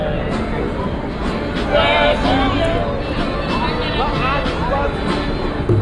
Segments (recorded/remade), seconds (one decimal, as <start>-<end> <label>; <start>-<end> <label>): 0.0-5.8 recorded